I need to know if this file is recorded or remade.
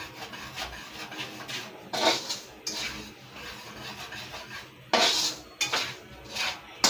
recorded